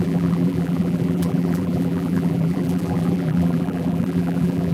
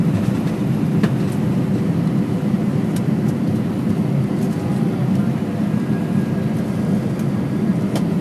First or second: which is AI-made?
first